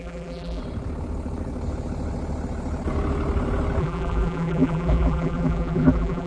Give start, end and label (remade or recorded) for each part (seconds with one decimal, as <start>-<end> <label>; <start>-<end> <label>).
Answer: 0.0-0.6 remade; 0.6-3.8 recorded; 3.8-6.3 remade